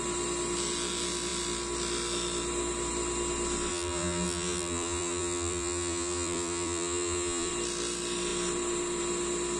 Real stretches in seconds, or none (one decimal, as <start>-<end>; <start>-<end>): 0.0-3.7; 7.5-9.6